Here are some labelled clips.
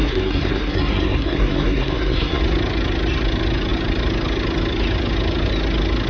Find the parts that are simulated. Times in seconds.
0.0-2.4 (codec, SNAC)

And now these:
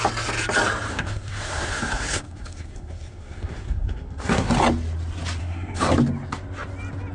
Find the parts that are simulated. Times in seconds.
0.9-4.5 (codec, SNAC); 5.4-5.9

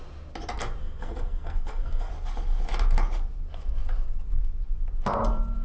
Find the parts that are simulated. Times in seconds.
0.8-2.1 (codec, SNAC)

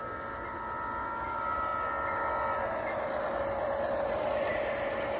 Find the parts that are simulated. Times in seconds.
none

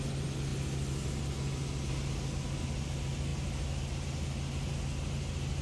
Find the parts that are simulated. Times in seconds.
none

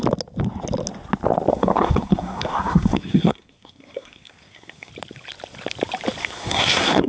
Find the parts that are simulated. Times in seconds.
1.5-4.9 (codec, SNAC); 6.2-7.1

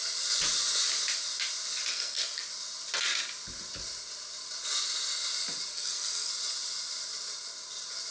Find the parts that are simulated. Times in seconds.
1.9-2.4 (codec, SNAC); 5.7-6.3

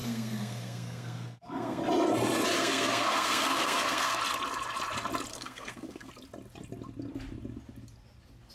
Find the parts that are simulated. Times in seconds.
0.0-1.8 (codec, SNAC); 2.6-4.2; 5.3-6.1